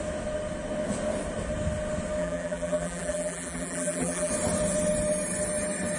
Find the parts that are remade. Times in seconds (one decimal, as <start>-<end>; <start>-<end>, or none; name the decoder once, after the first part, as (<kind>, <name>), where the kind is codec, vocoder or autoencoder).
2.2-4.3 (vocoder, BigVGAN v2)